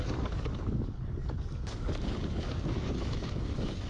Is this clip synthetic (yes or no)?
yes